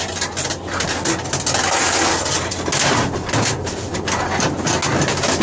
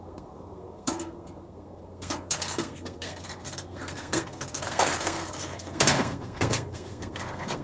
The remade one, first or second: second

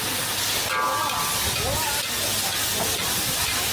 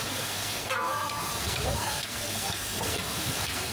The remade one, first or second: second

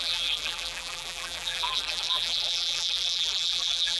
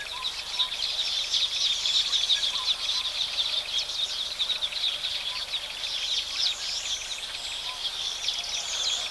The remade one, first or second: first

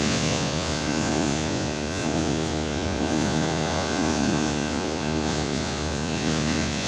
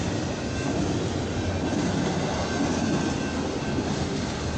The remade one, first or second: first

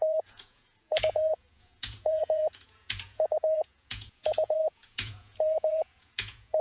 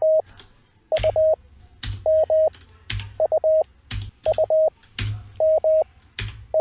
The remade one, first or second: first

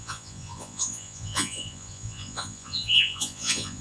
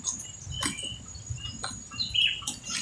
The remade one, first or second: first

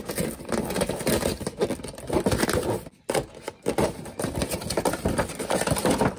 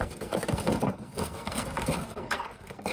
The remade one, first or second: second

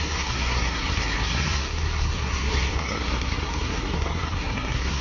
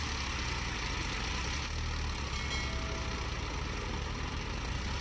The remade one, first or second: first